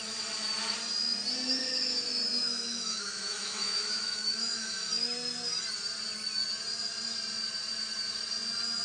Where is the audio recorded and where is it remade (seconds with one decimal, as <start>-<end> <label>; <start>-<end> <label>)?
0.0-1.6 recorded; 1.6-4.9 remade; 4.9-8.8 recorded